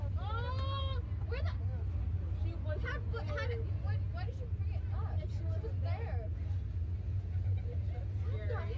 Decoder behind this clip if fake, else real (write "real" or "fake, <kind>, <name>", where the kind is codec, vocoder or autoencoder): real